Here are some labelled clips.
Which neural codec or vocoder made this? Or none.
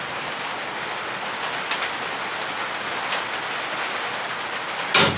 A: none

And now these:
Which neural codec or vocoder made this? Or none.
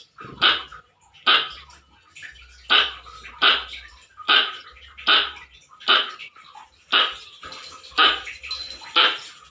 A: none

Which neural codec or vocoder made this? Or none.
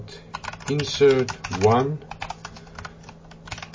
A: none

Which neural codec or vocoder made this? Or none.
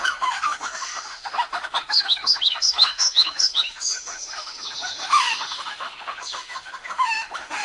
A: autoencoder, DAC-VAE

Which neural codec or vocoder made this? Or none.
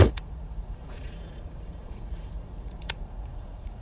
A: vocoder, Vocos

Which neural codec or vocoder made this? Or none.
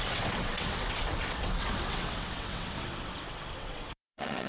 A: vocoder, WaveNeXt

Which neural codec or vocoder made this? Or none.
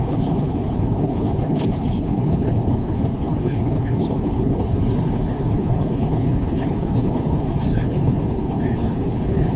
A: codec, HILCodec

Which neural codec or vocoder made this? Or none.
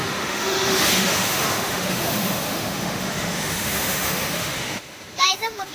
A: autoencoder, DAC-VAE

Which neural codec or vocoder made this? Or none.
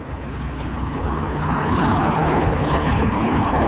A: codec, HILCodec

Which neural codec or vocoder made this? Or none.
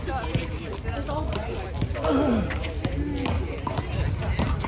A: none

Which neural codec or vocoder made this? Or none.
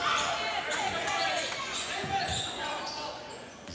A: vocoder, Vocos